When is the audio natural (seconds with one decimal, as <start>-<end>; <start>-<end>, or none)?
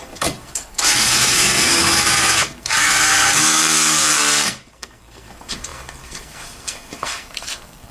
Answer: none